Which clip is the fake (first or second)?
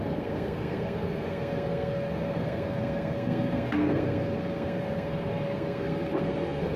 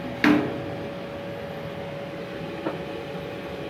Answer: first